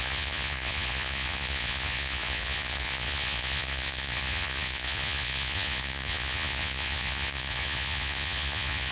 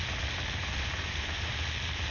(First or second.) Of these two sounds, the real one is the second